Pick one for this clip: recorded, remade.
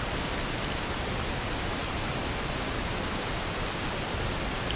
recorded